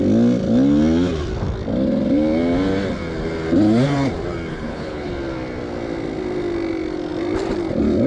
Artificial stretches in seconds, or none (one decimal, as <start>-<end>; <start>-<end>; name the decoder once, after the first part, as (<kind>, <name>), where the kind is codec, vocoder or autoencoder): 4.5-5.1 (codec, HILCodec)